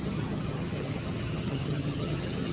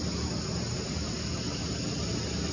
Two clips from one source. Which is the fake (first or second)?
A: first